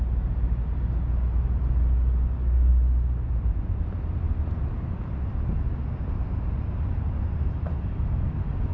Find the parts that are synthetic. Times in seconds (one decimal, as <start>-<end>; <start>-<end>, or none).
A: none